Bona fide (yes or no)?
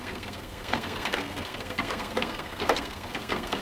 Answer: no